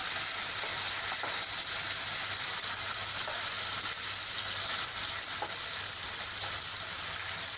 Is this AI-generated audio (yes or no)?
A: no